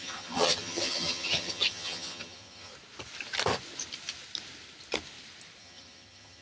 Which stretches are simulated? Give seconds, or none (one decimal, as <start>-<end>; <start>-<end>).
0.0-2.7; 5.6-6.4